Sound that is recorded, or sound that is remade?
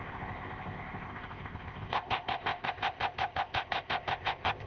remade